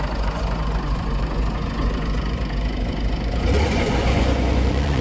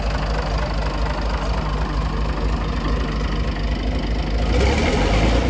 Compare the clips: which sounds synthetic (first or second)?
first